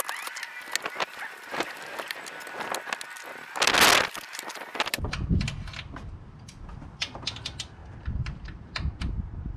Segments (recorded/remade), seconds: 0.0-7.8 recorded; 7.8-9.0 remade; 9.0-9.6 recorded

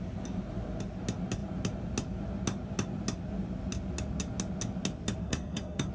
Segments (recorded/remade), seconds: 0.0-5.2 recorded; 5.2-5.9 remade

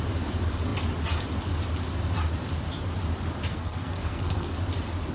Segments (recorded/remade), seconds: 0.0-3.5 recorded; 3.5-4.5 remade; 4.5-5.1 recorded

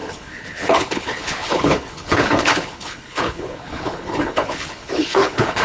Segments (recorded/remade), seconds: 0.0-5.6 remade

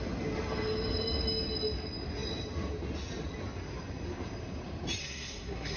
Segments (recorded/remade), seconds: 0.0-5.0 recorded; 5.0-5.8 remade

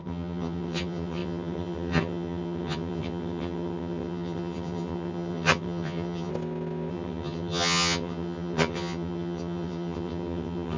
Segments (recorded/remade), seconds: 0.0-6.3 remade; 6.3-6.9 recorded; 6.9-10.8 remade

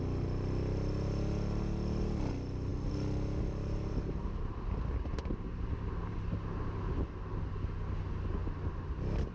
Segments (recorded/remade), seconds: 0.0-9.3 recorded

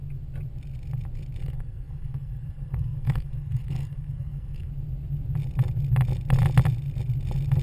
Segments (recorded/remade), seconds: 0.0-1.4 recorded; 1.4-4.7 remade; 4.7-7.6 recorded